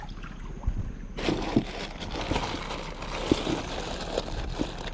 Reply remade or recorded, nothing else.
recorded